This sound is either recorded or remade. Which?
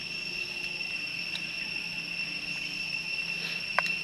recorded